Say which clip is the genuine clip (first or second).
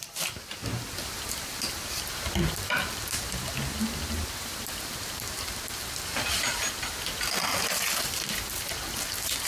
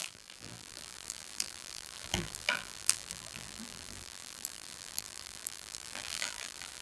first